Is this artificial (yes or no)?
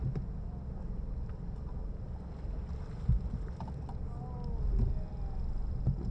no